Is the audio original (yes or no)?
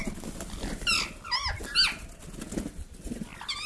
yes